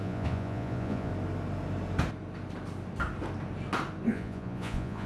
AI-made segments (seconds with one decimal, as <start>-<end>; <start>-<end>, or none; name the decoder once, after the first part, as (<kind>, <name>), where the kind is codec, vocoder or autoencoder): 0.0-1.1 (vocoder, Vocos); 4.1-5.1